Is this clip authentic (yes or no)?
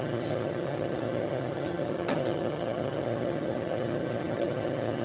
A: no